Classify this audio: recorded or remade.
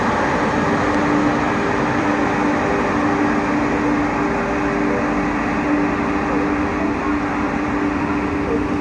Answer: recorded